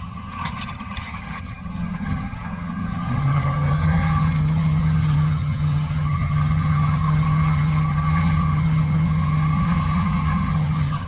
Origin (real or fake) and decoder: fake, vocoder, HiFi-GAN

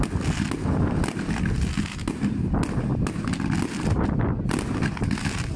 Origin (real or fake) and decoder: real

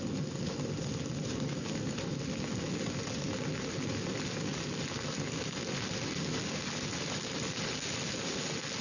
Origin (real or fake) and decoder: real